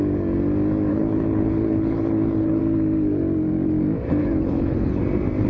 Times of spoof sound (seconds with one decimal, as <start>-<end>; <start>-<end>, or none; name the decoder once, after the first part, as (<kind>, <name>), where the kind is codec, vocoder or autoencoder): 0.9-2.6 (codec, HILCodec); 4.2-5.0